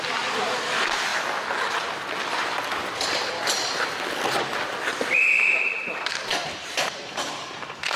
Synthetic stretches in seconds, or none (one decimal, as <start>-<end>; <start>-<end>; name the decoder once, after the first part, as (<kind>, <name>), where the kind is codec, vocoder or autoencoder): 0.0-1.1 (vocoder, BigVGAN v2); 4.8-8.0